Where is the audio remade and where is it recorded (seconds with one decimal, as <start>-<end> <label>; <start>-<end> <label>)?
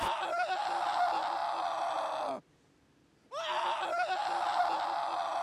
0.0-5.4 recorded